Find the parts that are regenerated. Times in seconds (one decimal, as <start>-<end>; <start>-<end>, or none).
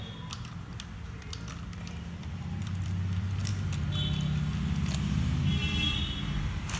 0.0-0.7; 1.5-3.5